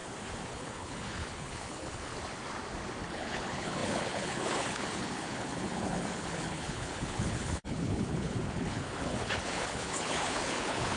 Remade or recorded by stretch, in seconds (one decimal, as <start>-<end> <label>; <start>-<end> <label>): 0.0-0.5 recorded; 0.5-2.1 remade; 2.1-3.1 recorded; 3.1-11.0 remade